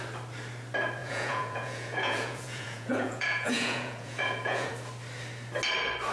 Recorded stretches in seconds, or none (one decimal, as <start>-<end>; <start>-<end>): 0.0-1.0; 4.7-6.1